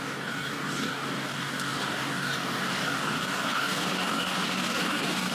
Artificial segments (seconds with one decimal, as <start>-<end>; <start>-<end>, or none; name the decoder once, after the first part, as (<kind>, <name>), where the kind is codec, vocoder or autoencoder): 0.0-5.3 (codec, DAC)